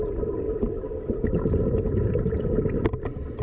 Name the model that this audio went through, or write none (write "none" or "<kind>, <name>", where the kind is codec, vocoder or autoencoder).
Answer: none